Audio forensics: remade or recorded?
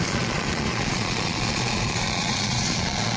remade